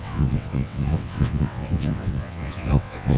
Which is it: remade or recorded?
remade